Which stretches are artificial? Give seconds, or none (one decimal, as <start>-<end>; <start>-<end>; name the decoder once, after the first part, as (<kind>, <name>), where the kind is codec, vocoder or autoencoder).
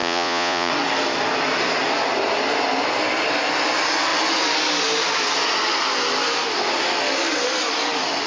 0.0-0.7 (vocoder, Vocos)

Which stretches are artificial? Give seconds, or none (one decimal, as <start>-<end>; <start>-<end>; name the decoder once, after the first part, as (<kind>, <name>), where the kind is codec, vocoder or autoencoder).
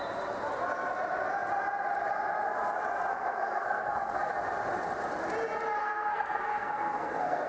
3.1-4.3 (codec, SNAC); 5.8-7.5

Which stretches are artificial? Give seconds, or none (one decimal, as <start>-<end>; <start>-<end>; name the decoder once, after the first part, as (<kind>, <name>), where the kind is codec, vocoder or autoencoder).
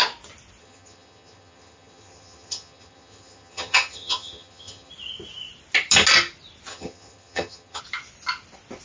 0.6-4.9 (vocoder, HiFi-GAN); 6.7-7.8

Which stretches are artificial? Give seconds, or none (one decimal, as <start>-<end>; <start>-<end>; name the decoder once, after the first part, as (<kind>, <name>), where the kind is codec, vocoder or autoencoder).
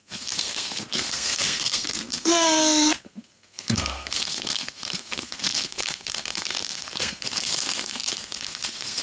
0.0-9.0 (codec, SNAC)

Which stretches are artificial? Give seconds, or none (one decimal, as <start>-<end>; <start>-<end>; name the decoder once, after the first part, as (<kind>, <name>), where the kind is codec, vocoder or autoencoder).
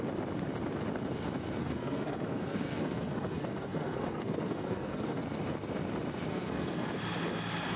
1.6-5.2 (codec, SNAC); 6.3-6.9